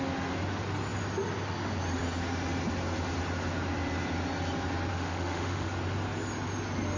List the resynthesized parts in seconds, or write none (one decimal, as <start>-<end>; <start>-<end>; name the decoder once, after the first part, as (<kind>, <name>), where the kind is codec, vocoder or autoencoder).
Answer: 4.9-5.7 (autoencoder, DAC-VAE)